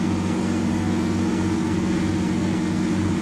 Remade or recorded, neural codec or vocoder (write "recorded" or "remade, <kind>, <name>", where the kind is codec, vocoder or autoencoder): remade, codec, SNAC